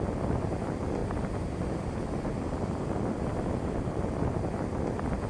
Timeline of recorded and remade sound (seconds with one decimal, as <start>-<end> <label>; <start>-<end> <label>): 0.0-1.0 recorded; 1.0-4.2 remade; 4.2-5.3 recorded